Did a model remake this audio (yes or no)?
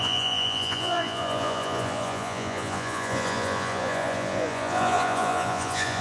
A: yes